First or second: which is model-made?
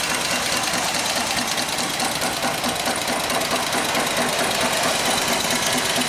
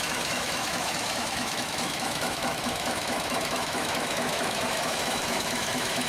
second